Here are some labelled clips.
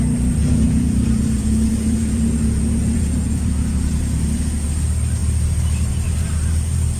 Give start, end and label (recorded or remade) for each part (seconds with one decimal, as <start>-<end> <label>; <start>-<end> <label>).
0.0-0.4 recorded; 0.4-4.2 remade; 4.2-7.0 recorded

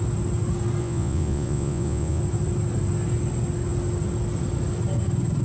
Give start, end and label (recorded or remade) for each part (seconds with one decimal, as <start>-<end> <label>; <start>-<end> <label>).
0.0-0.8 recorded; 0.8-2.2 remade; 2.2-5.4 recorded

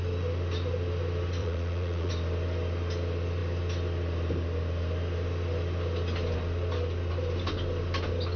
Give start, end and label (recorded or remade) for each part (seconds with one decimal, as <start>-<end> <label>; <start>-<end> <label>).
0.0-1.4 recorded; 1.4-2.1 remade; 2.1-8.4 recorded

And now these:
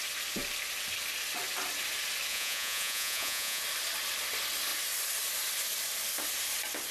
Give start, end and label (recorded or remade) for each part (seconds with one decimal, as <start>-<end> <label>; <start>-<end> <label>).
0.0-2.3 recorded; 2.3-3.6 remade; 3.6-6.9 recorded

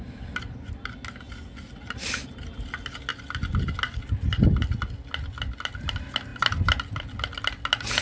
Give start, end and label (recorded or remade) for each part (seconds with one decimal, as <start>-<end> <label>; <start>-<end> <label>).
0.0-8.0 recorded